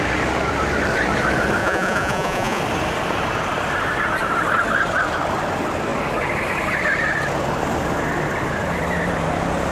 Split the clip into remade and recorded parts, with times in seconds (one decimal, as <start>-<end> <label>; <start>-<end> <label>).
0.0-1.6 recorded; 1.6-2.6 remade; 2.6-9.7 recorded